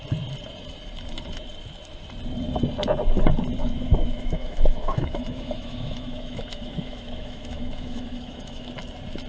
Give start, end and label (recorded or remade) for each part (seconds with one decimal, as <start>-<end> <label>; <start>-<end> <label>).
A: 0.0-3.6 recorded; 3.6-8.7 remade; 8.7-9.3 recorded